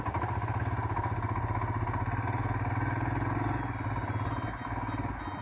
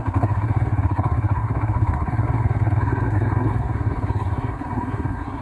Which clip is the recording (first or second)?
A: first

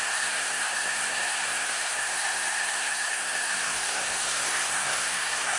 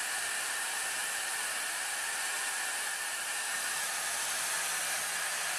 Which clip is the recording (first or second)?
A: second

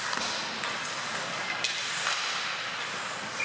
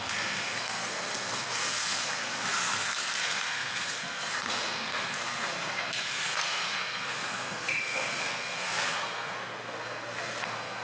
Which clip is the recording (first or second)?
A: first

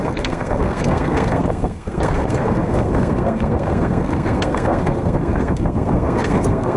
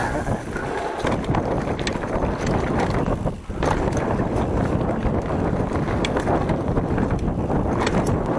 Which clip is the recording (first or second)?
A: second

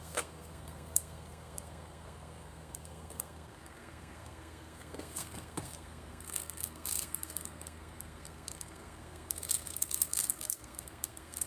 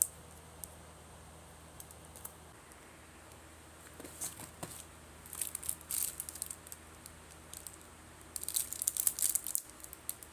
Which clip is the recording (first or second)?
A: second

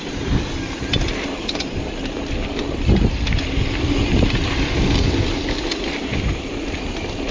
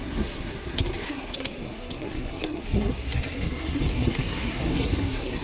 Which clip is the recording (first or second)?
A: first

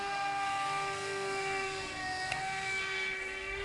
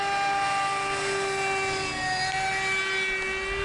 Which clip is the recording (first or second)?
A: second